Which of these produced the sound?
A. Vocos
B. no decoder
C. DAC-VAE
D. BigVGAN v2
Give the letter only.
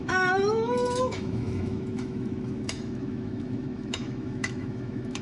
C